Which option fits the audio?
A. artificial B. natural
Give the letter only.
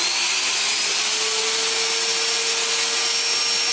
B